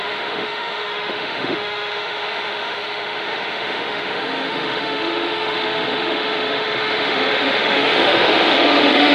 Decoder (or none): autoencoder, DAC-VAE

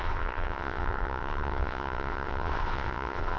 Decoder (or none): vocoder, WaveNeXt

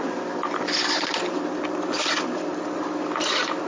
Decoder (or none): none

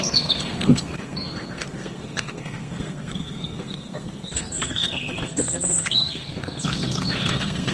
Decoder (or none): codec, SNAC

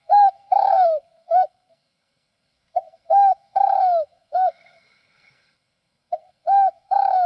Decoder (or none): codec, SNAC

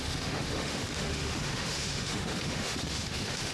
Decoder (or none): autoencoder, DAC-VAE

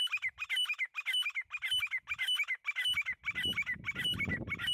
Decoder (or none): none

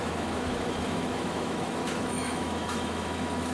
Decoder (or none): autoencoder, DAC-VAE